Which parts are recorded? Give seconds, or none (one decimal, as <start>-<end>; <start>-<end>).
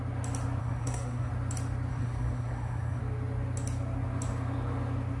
0.0-0.6; 1.3-1.9; 3.0-5.2